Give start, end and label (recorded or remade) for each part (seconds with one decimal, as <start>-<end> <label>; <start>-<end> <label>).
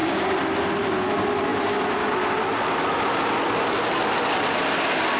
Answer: 0.0-5.2 recorded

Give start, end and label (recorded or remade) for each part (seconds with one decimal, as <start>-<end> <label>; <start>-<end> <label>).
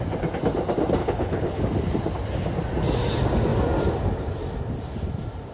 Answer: 0.0-1.0 recorded; 1.0-1.6 remade; 1.6-5.5 recorded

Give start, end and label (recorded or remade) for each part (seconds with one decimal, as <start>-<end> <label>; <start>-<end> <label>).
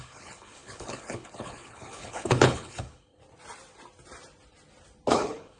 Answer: 0.0-3.2 remade; 3.2-5.1 recorded; 5.1-5.6 remade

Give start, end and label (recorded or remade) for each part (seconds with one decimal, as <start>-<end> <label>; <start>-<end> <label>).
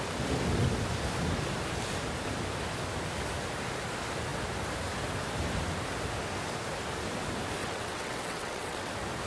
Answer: 0.0-7.6 recorded; 7.6-8.9 remade; 8.9-9.3 recorded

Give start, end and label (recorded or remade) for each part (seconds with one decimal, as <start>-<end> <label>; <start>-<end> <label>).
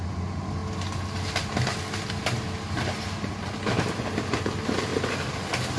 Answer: 0.0-5.8 recorded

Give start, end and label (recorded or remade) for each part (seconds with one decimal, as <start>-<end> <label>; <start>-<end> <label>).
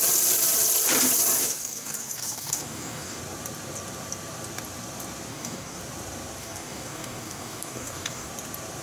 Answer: 0.0-1.4 recorded; 1.4-3.2 remade; 3.2-5.3 recorded; 5.3-5.8 remade; 5.8-6.4 recorded; 6.4-8.3 remade; 8.3-8.8 recorded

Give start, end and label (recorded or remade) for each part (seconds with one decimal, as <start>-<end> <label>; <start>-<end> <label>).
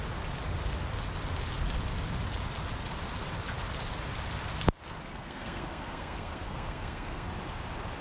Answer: 0.0-5.1 recorded; 5.1-7.3 remade; 7.3-8.0 recorded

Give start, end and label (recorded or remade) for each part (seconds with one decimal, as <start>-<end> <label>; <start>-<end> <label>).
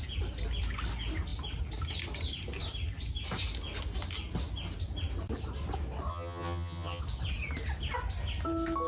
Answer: 0.0-6.1 recorded; 6.1-7.0 remade; 7.0-8.9 recorded